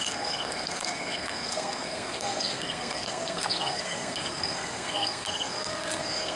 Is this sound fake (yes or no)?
yes